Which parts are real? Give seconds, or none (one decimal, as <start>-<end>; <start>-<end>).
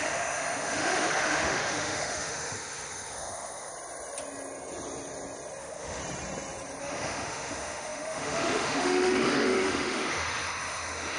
3.7-5.6; 6.0-6.8